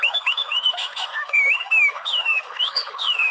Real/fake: fake